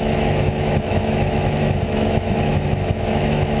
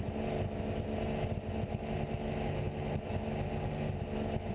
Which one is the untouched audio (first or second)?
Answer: second